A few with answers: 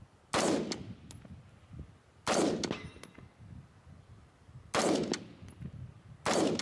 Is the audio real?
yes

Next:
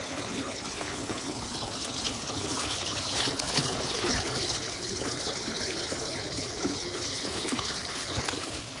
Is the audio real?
no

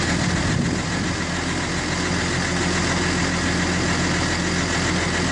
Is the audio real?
yes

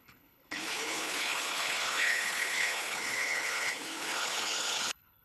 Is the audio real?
no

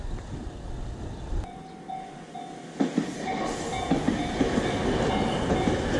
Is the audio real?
yes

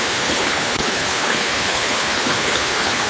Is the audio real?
no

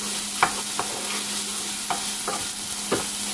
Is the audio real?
yes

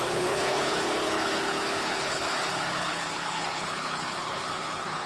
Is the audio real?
no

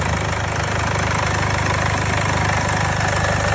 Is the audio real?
yes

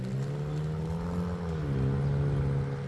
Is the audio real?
yes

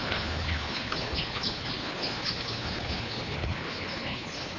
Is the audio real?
no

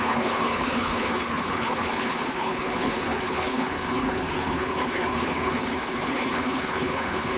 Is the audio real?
no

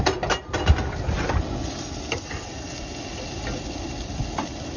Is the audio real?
yes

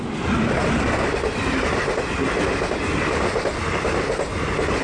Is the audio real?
yes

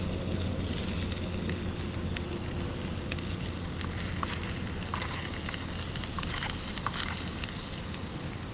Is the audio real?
yes